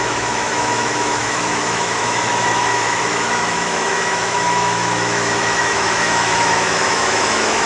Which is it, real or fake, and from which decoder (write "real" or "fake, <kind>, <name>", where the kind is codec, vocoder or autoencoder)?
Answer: fake, autoencoder, DAC-VAE